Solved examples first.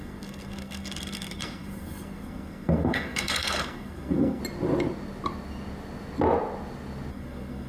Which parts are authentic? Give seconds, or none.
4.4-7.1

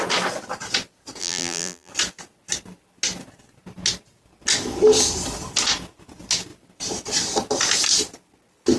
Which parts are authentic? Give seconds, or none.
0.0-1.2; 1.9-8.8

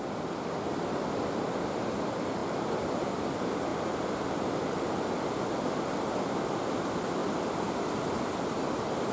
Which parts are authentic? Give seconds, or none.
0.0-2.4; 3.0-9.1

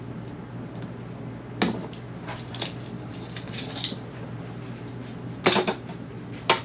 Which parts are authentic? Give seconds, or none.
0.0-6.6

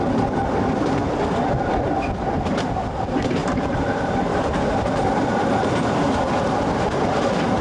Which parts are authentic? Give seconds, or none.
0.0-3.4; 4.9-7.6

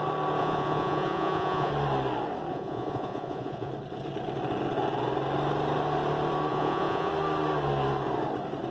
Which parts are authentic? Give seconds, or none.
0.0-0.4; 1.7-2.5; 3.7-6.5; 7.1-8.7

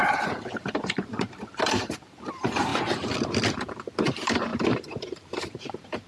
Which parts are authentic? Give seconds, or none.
2.7-4.0